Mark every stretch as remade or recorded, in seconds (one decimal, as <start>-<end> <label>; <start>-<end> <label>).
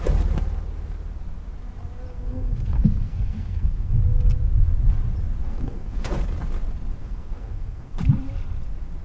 0.0-2.1 recorded; 2.1-4.0 remade; 4.0-5.4 recorded; 5.4-6.1 remade; 6.1-7.0 recorded; 7.0-8.0 remade; 8.0-9.0 recorded